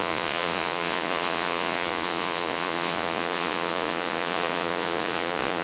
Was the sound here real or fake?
fake